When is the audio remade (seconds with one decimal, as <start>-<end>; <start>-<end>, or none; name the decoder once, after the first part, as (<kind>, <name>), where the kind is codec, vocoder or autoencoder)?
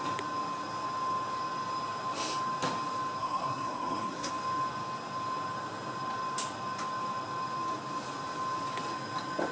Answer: 3.2-4.3 (codec, SNAC)